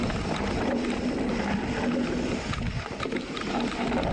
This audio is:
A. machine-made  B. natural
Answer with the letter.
B